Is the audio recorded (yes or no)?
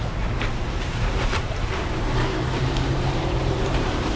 no